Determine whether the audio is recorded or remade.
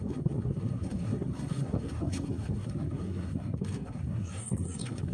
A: remade